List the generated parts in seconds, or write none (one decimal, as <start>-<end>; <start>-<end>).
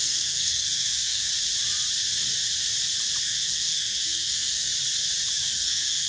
0.0-1.3; 3.2-4.7; 5.3-6.1